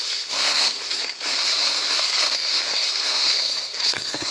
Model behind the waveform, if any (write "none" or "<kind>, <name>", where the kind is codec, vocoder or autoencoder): codec, SNAC